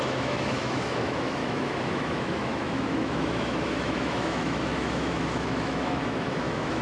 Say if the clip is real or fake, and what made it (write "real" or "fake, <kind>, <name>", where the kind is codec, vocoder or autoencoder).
fake, autoencoder, DAC-VAE